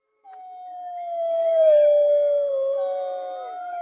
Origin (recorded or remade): recorded